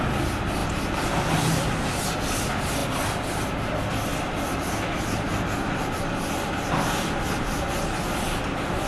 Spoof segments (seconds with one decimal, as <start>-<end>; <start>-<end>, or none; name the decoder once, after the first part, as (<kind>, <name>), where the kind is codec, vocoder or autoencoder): none